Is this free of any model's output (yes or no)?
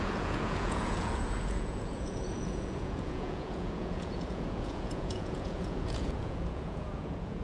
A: no